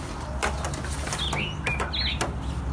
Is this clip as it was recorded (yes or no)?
yes